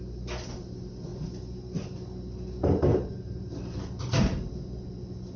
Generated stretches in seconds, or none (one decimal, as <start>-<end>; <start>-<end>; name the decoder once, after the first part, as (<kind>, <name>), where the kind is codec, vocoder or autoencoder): 2.9-4.5 (vocoder, BigVGAN v2)